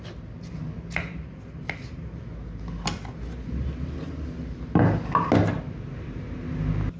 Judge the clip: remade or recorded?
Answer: recorded